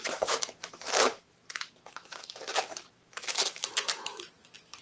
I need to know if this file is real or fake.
fake